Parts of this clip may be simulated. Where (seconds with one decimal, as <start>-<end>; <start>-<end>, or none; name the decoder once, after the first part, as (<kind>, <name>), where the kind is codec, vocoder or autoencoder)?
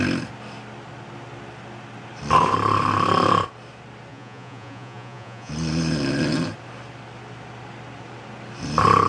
4.1-5.5 (vocoder, Vocos)